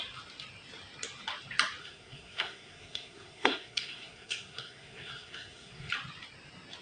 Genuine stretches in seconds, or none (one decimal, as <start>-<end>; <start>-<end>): 0.0-1.8; 5.9-6.8